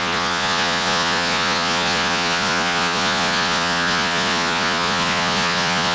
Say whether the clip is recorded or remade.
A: remade